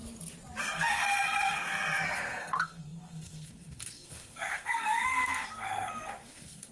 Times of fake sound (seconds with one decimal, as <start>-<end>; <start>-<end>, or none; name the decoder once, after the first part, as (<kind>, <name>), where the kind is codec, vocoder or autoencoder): 0.6-6.7 (codec, SNAC)